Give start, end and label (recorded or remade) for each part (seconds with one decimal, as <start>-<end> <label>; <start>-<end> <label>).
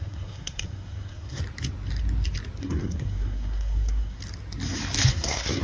0.0-1.4 remade; 1.4-2.6 recorded; 2.6-4.2 remade; 4.2-5.1 recorded; 5.1-5.6 remade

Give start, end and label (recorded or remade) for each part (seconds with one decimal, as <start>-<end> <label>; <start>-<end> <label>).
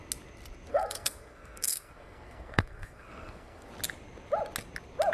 0.0-0.7 recorded; 0.7-3.7 remade; 3.7-5.1 recorded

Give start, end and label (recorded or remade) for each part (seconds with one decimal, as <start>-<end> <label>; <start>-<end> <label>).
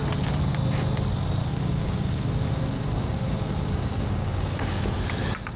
0.0-1.4 recorded; 1.4-4.8 remade; 4.8-5.6 recorded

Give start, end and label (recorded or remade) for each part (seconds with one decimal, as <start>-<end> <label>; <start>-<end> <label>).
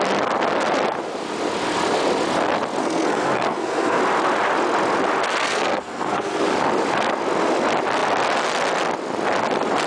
0.0-2.8 recorded; 2.8-4.0 remade; 4.0-5.4 recorded; 5.4-6.4 remade; 6.4-9.9 recorded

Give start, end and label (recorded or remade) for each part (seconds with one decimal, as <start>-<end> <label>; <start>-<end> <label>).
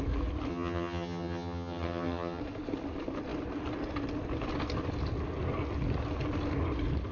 0.0-0.5 recorded; 0.5-2.4 remade; 2.4-7.1 recorded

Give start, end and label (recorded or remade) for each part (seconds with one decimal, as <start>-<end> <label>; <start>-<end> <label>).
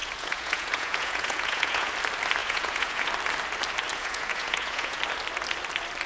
0.0-1.9 remade; 1.9-2.4 recorded; 2.4-3.1 remade; 3.1-3.9 recorded; 3.9-5.0 remade; 5.0-6.1 recorded